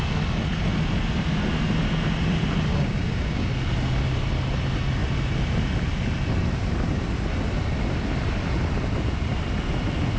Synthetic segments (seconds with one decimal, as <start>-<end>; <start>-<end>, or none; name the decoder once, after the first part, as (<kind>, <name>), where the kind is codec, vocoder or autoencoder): 2.7-3.5 (codec, DAC)